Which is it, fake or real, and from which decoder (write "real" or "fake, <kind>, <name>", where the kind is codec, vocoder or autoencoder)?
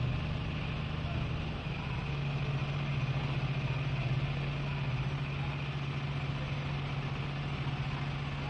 real